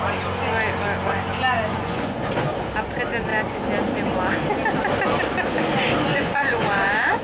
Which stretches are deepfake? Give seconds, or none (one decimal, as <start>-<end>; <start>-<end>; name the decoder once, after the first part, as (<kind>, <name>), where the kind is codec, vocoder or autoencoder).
1.7-2.3 (vocoder, Vocos); 6.1-7.2